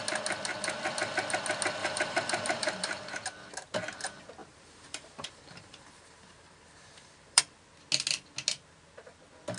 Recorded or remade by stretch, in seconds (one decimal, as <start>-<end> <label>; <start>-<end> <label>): 0.0-1.8 recorded; 1.8-3.0 remade; 3.0-4.4 recorded; 4.4-7.4 remade; 7.4-9.6 recorded

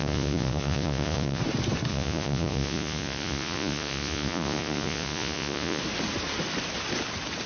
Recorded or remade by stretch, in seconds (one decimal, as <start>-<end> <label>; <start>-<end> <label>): 0.0-1.4 remade; 1.4-1.9 recorded; 1.9-5.8 remade; 5.8-7.5 recorded

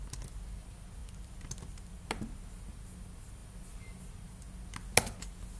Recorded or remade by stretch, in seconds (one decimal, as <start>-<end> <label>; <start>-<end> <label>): 0.0-5.6 recorded

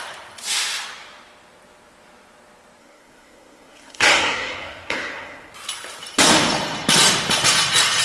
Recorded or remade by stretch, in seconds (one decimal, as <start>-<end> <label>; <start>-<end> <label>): 0.0-2.8 recorded; 2.8-5.5 remade; 5.5-8.0 recorded

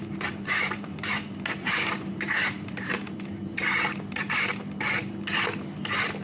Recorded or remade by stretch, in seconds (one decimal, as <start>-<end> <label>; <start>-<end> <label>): 0.0-3.6 remade; 3.6-6.2 recorded